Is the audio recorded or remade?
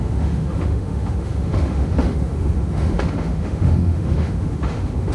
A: remade